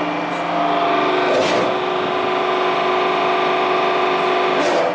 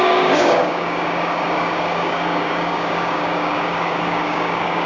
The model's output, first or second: second